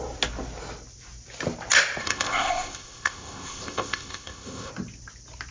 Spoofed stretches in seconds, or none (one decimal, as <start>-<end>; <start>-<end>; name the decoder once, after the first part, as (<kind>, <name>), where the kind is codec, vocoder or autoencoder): 2.0-4.7 (codec, ZipCodec)